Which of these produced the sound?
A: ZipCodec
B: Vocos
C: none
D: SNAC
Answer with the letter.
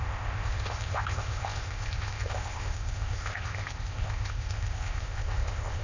A